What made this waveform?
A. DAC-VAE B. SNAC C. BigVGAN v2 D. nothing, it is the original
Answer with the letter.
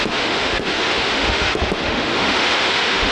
A